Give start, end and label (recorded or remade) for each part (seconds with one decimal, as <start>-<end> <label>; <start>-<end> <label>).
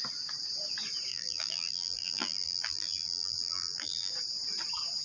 0.0-1.1 recorded; 1.1-4.1 remade; 4.1-5.0 recorded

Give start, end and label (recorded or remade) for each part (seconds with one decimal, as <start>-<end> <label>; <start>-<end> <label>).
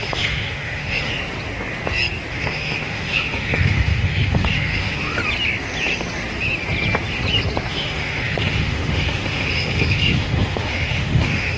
0.0-1.1 remade; 1.1-2.3 recorded; 2.3-5.2 remade; 5.2-7.7 recorded; 7.7-11.6 remade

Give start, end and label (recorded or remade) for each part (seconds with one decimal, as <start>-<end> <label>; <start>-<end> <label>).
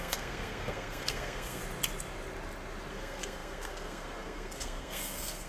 0.0-1.6 remade; 1.6-2.9 recorded; 2.9-5.5 remade